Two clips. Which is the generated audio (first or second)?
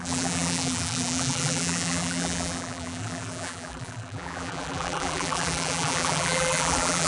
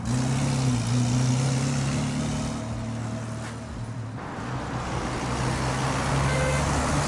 first